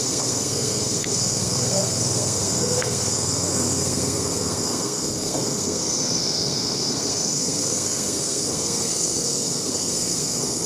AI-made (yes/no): yes